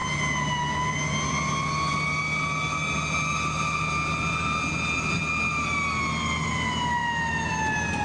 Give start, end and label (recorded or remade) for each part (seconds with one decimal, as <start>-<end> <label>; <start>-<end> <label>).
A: 0.0-8.0 recorded